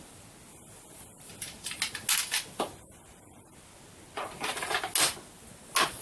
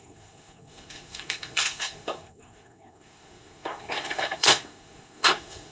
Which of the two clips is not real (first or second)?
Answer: second